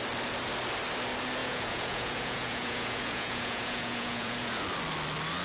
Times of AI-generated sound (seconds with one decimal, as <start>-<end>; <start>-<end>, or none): 1.4-4.6